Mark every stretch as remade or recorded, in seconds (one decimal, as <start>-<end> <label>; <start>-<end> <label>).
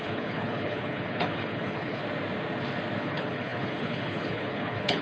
0.0-2.0 remade; 2.0-3.0 recorded; 3.0-5.0 remade